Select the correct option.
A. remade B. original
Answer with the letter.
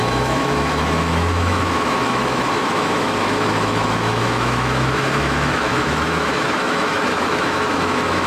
A